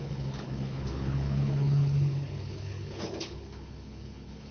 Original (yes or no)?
no